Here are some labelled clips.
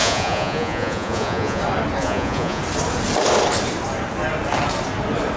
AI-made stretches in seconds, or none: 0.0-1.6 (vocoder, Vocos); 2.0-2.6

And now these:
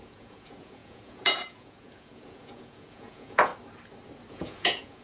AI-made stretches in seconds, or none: 0.0-3.5 (vocoder, Vocos); 4.3-5.0

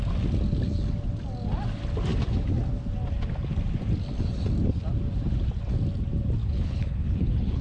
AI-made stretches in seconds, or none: 6.4-7.6 (codec, HILCodec)

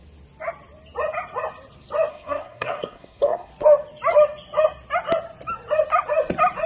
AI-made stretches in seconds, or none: 2.1-3.5 (codec, SNAC)

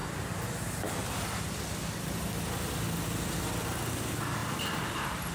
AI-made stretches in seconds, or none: none

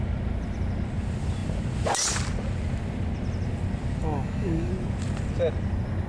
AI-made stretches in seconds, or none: 4.0-4.7 (codec, DAC)